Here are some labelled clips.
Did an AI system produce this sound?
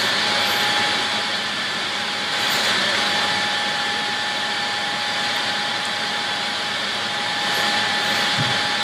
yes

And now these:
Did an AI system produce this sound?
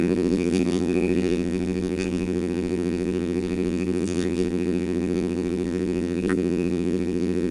yes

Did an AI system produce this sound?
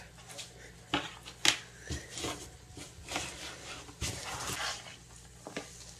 no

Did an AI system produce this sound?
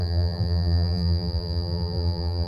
yes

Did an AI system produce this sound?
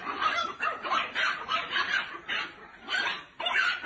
yes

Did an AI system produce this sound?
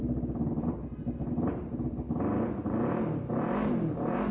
no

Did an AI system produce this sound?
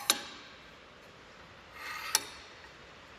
no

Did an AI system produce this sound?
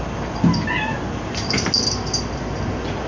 no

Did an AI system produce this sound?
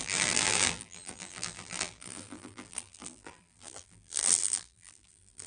yes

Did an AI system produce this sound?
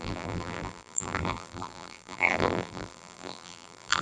yes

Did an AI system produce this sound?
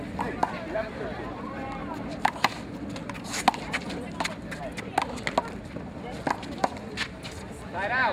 no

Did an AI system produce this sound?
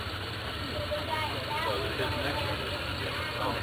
yes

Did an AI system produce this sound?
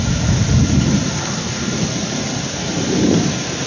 no